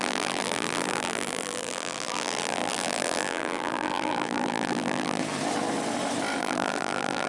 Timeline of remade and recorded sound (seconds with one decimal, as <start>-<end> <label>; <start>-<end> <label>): 0.0-5.2 remade; 5.2-6.4 recorded; 6.4-7.3 remade